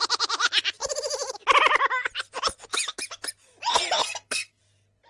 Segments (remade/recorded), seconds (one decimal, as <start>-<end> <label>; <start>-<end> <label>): 0.0-4.0 recorded; 4.0-4.6 remade; 4.6-5.1 recorded